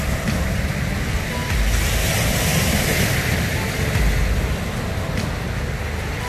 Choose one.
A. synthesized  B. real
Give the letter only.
B